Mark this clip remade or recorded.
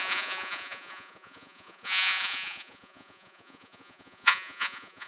remade